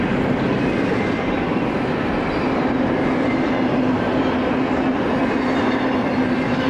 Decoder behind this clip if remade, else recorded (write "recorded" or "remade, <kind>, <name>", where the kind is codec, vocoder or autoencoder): recorded